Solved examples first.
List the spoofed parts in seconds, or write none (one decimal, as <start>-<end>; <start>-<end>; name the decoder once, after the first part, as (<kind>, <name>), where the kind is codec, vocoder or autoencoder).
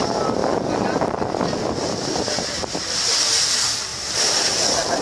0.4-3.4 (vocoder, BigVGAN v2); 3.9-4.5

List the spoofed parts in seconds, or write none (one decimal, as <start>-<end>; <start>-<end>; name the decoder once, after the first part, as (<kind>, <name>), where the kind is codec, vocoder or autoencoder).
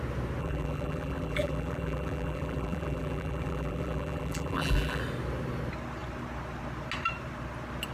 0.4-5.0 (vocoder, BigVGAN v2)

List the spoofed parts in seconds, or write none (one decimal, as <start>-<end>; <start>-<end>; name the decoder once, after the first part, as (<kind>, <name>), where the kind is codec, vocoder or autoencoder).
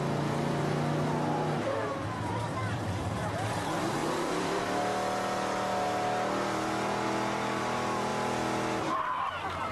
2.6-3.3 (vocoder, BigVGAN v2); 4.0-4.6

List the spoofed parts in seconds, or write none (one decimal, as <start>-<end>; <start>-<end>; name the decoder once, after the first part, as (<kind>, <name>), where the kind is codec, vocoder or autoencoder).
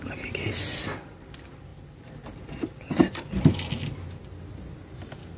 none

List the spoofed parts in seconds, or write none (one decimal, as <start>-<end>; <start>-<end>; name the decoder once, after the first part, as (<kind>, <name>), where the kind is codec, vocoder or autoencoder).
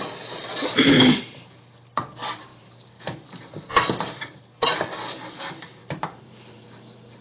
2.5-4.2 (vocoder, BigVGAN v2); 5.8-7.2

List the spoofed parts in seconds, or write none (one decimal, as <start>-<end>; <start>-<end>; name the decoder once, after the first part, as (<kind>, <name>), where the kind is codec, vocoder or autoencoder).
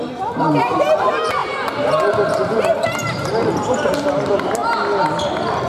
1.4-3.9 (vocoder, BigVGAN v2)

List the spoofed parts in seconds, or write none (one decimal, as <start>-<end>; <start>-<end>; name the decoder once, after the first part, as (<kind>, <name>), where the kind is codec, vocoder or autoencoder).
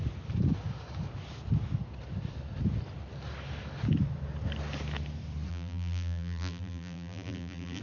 5.5-7.8 (vocoder, BigVGAN v2)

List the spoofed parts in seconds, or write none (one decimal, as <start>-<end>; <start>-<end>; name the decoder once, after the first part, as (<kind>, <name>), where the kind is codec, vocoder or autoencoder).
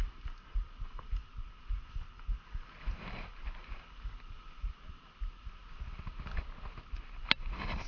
5.6-7.2 (vocoder, BigVGAN v2)